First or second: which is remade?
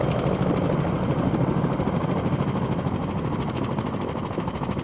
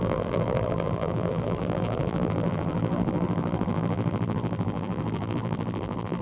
second